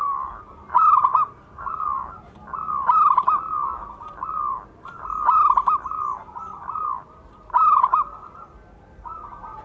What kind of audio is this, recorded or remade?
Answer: recorded